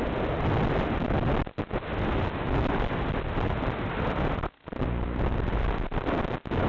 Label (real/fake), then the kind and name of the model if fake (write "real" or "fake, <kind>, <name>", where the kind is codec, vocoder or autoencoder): real